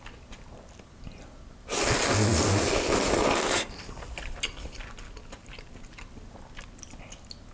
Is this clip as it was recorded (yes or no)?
yes